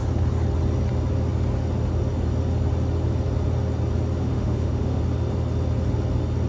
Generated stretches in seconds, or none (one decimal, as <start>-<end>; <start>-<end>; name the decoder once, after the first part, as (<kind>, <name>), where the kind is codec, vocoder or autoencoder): 4.2-5.0 (autoencoder, DAC-VAE)